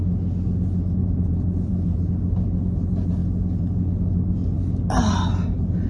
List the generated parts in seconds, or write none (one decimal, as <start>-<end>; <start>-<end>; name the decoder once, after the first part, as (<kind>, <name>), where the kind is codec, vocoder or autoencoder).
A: 1.0-2.1 (vocoder, BigVGAN v2)